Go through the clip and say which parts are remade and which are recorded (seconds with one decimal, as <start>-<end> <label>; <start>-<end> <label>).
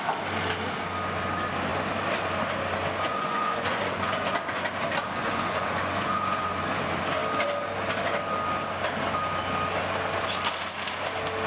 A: 0.0-3.1 recorded; 3.1-4.7 remade; 4.7-5.2 recorded; 5.2-6.5 remade; 6.5-11.5 recorded